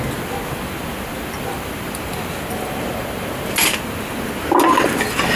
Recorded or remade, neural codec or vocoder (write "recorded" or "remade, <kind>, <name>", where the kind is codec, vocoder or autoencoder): recorded